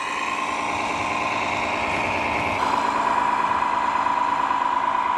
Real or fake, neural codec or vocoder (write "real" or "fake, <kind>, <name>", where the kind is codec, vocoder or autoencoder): real